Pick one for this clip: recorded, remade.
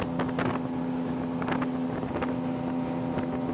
recorded